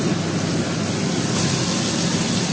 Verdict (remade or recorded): recorded